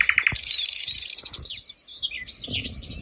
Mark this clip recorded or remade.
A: recorded